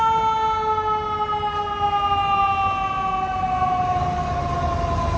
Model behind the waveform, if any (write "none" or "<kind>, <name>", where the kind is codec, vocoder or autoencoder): none